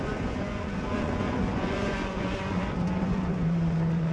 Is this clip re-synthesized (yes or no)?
yes